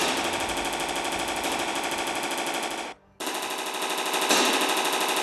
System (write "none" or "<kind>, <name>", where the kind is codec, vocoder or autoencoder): none